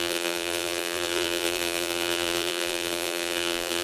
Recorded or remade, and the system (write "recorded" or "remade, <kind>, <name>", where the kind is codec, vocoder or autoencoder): remade, vocoder, BigVGAN v2